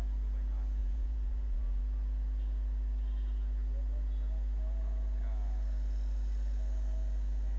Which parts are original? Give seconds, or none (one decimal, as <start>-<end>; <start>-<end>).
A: 0.0-0.8; 1.8-7.6

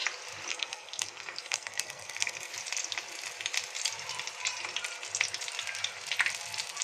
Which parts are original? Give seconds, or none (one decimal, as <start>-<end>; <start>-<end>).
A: 0.0-0.5; 2.5-6.8

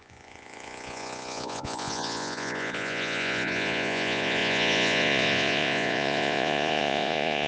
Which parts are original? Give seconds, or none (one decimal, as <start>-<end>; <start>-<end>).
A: none

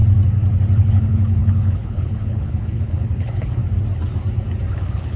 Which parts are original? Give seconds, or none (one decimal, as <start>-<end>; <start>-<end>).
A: 0.0-0.8; 3.6-4.7

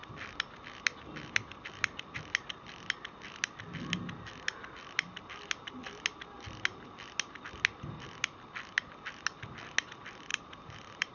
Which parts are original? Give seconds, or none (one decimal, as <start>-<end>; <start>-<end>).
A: 0.0-10.3

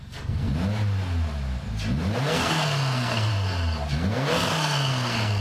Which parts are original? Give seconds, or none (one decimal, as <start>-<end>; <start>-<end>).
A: 0.5-2.2; 3.3-3.9

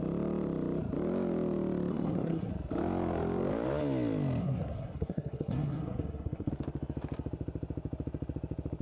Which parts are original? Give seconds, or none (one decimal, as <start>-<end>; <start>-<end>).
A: 0.0-1.9; 2.5-4.4; 6.5-8.8